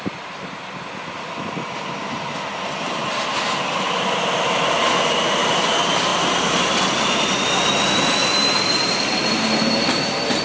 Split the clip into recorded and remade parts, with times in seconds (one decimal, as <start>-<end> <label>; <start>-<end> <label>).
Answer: 0.0-8.2 recorded; 8.2-10.4 remade